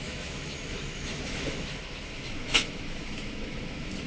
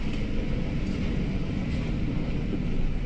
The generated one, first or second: first